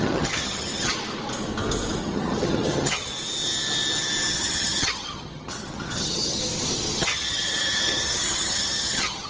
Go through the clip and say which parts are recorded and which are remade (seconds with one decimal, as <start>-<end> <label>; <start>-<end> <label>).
0.0-0.9 remade; 0.9-2.0 recorded; 2.0-3.1 remade; 3.1-4.3 recorded; 4.3-6.4 remade; 6.4-7.0 recorded; 7.0-9.3 remade